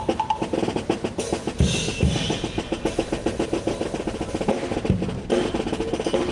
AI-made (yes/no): no